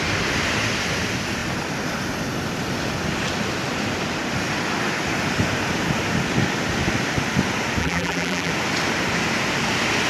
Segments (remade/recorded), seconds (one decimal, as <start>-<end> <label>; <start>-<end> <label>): 0.0-7.8 recorded; 7.8-8.5 remade; 8.5-10.1 recorded